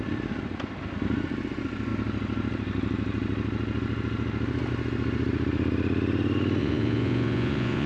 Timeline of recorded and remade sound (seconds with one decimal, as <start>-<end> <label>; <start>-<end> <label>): 0.0-6.6 recorded; 6.6-7.9 remade